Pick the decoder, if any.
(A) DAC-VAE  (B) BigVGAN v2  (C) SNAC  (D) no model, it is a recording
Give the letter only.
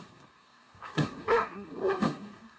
C